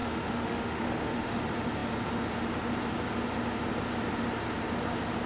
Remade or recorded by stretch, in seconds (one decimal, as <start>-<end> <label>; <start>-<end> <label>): 0.0-1.4 remade; 1.4-5.3 recorded